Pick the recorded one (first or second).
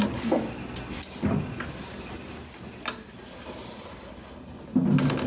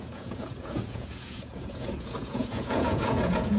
first